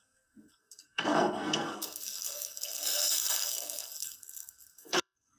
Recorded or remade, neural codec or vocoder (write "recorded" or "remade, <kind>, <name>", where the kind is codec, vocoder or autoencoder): remade, codec, SNAC